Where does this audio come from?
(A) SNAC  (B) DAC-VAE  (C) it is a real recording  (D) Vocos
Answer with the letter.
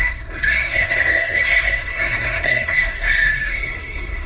A